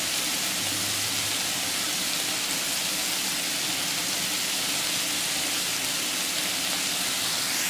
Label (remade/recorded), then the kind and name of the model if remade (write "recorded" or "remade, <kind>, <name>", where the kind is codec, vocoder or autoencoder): recorded